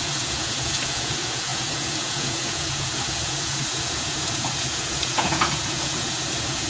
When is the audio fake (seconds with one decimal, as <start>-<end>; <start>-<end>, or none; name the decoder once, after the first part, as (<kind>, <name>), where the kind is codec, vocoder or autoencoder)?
0.0-6.7 (vocoder, Vocos)